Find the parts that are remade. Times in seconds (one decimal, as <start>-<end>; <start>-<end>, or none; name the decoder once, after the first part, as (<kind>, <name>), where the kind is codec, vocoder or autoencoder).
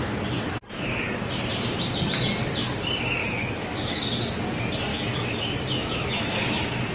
3.2-4.0 (autoencoder, DAC-VAE); 4.9-6.9